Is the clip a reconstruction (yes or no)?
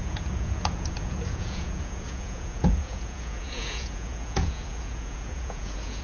yes